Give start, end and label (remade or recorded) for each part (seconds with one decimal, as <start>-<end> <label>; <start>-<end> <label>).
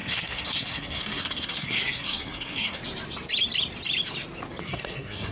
0.0-2.8 remade; 2.8-4.6 recorded; 4.6-5.3 remade